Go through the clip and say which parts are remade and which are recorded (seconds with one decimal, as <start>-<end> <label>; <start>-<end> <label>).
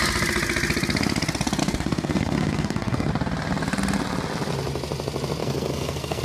0.0-1.6 recorded; 1.6-3.1 remade; 3.1-5.4 recorded; 5.4-6.2 remade